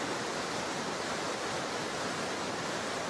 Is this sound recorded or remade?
recorded